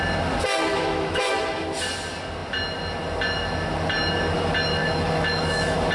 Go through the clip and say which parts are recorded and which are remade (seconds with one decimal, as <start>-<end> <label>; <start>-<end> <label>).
0.0-0.7 recorded; 0.7-1.3 remade; 1.3-4.8 recorded; 4.8-5.9 remade